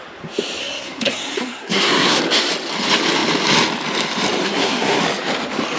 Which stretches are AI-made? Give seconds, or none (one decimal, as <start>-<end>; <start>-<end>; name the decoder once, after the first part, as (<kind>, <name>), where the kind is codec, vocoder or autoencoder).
0.6-2.2 (codec, SNAC); 4.4-5.0